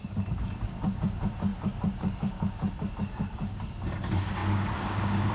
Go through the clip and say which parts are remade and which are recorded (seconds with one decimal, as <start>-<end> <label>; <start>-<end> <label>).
0.0-5.3 remade